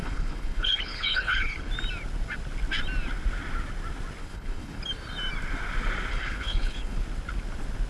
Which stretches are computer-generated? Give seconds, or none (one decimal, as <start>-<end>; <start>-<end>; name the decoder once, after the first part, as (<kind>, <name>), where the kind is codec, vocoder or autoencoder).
0.0-1.7 (codec, HILCodec); 4.2-4.8; 6.1-7.0